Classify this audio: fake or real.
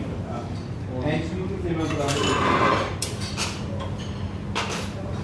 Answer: real